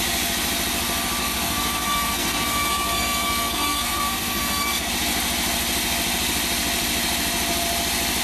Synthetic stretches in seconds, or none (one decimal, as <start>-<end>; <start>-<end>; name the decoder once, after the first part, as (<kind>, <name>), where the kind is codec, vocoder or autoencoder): 1.2-4.9 (codec, SNAC)